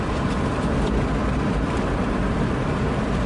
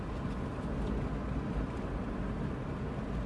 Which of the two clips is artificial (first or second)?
first